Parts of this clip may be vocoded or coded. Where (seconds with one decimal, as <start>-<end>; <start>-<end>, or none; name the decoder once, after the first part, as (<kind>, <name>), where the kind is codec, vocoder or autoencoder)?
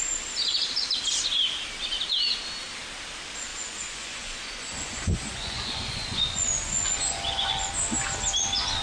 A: 3.5-7.7 (vocoder, Vocos)